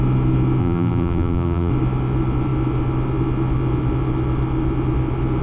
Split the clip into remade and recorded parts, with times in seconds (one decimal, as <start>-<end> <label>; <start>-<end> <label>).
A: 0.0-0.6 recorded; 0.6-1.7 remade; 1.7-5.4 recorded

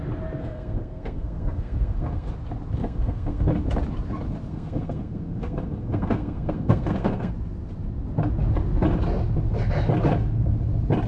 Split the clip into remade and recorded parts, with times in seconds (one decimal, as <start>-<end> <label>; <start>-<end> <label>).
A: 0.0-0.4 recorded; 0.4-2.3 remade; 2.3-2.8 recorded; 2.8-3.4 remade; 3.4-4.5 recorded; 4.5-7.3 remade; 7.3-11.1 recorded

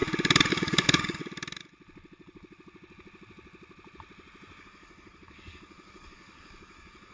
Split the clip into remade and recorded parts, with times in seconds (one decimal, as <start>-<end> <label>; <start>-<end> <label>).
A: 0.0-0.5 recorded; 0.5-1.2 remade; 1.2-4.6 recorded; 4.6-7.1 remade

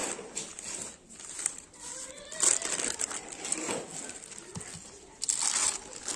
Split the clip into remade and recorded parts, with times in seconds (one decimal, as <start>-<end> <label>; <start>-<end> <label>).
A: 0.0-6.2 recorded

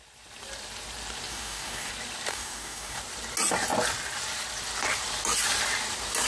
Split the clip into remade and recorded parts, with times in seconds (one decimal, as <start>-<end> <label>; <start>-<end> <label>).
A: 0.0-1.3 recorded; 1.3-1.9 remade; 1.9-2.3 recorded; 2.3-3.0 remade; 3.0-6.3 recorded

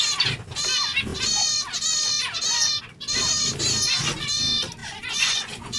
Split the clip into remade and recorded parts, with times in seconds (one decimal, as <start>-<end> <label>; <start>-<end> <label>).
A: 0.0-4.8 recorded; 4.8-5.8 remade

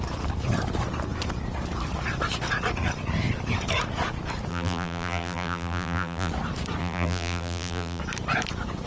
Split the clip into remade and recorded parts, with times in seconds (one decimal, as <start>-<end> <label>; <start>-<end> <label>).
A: 0.0-4.5 recorded; 4.5-6.3 remade; 6.3-6.8 recorded; 6.8-8.0 remade; 8.0-8.9 recorded

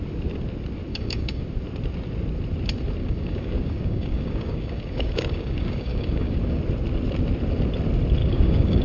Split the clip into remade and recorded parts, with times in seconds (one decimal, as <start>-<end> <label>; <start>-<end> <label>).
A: 0.0-0.9 recorded; 0.9-1.4 remade; 1.4-3.0 recorded; 3.0-6.6 remade; 6.6-8.2 recorded; 8.2-8.8 remade